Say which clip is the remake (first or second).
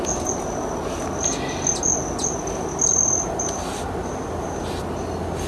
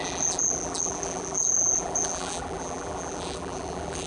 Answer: second